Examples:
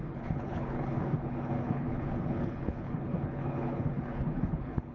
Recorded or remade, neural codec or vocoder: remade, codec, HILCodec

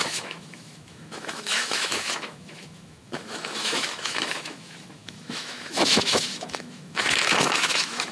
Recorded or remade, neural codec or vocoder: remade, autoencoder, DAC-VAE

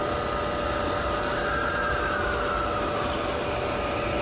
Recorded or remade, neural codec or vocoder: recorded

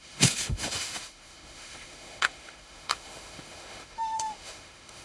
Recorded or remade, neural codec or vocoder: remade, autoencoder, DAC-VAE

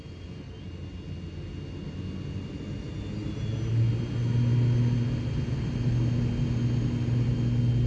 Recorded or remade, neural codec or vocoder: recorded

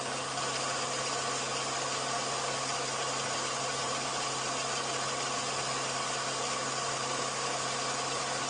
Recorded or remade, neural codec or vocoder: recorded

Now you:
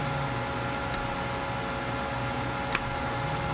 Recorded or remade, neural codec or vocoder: recorded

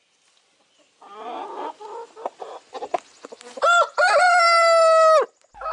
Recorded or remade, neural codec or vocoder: recorded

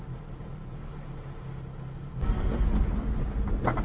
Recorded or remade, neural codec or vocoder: recorded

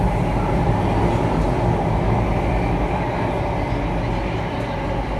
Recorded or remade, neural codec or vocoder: recorded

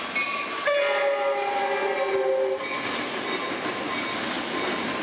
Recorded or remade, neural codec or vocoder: recorded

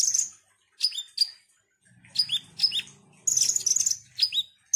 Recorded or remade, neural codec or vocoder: recorded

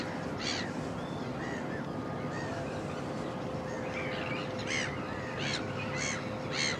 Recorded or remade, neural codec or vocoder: recorded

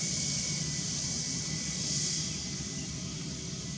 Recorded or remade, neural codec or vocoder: recorded